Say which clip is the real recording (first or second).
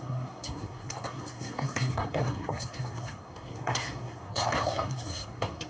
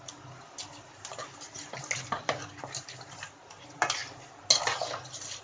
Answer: second